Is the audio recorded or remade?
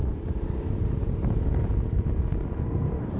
recorded